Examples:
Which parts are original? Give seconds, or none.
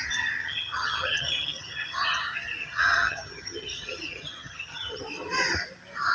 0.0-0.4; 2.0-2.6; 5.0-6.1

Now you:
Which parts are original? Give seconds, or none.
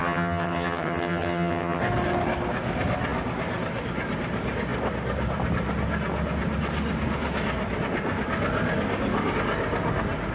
1.8-10.3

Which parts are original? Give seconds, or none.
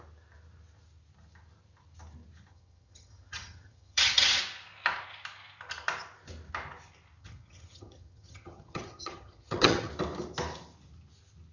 0.0-2.5; 4.4-7.2; 9.9-11.5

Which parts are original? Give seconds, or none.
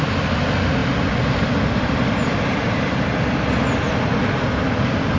0.0-5.2